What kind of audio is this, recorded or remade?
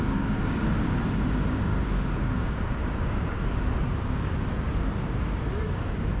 remade